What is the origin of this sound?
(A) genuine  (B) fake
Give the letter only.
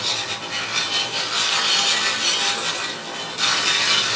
A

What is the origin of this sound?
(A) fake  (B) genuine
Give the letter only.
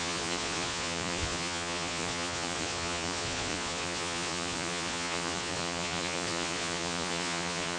A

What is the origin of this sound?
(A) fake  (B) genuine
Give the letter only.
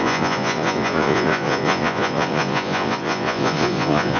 A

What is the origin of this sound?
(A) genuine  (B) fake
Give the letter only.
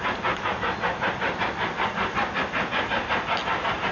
A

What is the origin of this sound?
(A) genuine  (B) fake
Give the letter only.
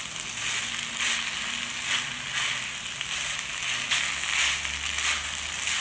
A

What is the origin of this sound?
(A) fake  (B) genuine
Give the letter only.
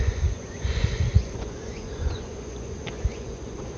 A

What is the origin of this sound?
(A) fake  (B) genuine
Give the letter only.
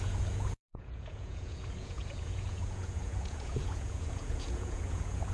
A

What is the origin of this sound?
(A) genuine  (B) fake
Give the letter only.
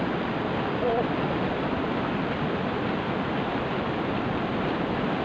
A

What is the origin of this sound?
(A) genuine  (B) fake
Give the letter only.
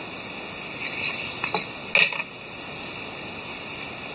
A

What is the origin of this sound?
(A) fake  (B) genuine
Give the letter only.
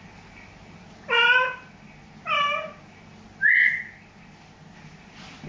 B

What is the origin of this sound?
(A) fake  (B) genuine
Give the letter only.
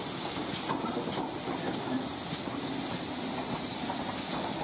B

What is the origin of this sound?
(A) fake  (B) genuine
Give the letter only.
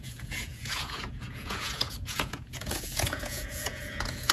A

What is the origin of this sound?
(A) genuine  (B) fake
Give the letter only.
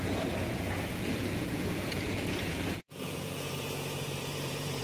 B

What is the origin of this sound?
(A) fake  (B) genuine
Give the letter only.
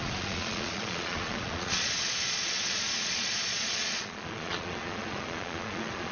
A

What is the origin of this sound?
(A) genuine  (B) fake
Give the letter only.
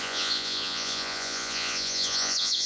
B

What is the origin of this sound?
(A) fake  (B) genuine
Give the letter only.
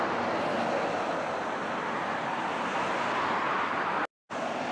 B